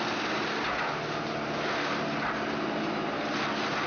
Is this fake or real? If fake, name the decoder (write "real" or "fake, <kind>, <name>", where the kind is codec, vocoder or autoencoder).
real